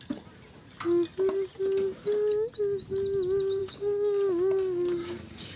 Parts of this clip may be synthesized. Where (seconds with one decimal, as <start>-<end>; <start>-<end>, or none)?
3.6-5.6